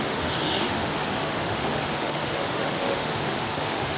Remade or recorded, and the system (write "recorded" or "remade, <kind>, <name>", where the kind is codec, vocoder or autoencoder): remade, autoencoder, DAC-VAE